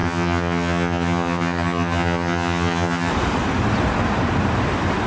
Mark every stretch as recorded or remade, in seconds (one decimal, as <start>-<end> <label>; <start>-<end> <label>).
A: 0.0-3.1 remade; 3.1-5.1 recorded